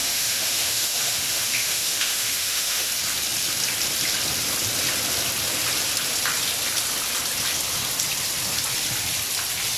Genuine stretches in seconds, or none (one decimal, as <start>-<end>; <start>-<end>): 2.9-9.8